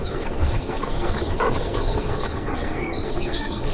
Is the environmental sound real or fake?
fake